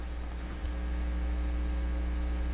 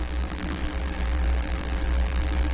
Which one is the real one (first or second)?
first